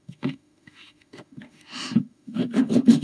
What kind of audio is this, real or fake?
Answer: fake